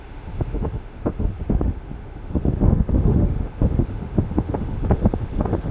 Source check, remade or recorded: remade